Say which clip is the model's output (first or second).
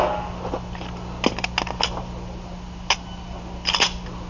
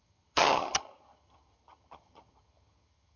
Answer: second